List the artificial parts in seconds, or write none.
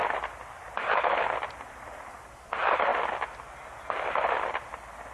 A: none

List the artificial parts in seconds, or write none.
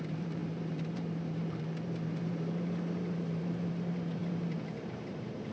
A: 0.0-5.5 (vocoder, BigVGAN v2)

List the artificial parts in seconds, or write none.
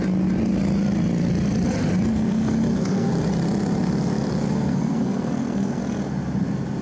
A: 2.1-3.1 (codec, SNAC); 4.4-5.8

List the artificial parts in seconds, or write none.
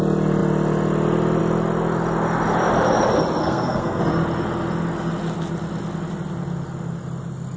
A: 3.4-4.0 (codec, SNAC)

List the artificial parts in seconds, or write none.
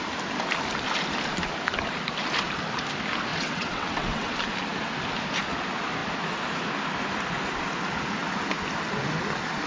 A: 3.3-4.3 (vocoder, WaveNeXt)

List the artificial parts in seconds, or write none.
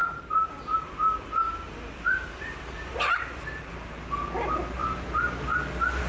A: 0.0-3.7 (vocoder, BigVGAN v2); 4.8-6.1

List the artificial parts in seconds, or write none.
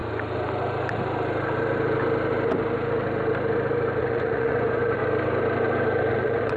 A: 4.0-5.0 (vocoder, Vocos); 6.1-6.6